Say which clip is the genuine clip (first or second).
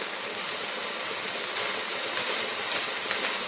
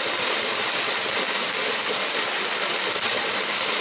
first